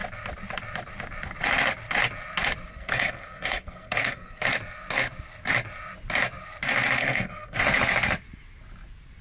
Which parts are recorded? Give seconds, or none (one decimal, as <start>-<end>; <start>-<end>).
0.0-2.7; 4.4-7.0; 7.6-9.2